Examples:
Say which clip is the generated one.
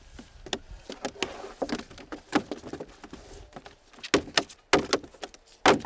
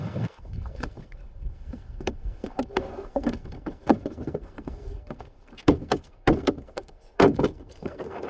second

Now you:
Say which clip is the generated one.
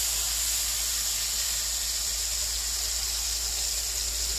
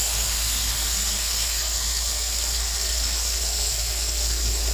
second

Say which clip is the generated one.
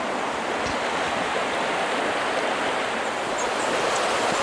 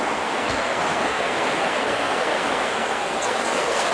second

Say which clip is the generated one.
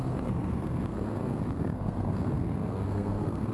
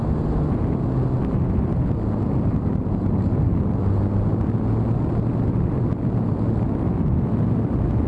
first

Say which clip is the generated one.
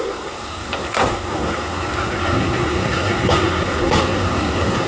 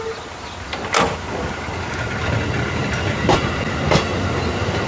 first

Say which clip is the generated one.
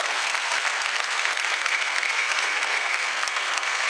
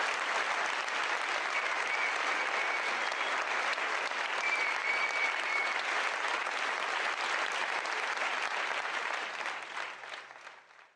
first